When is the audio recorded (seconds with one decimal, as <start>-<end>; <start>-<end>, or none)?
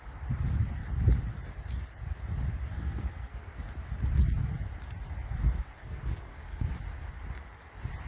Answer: 0.0-2.7; 3.6-5.8; 6.7-8.1